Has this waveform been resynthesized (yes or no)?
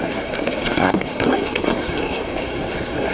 yes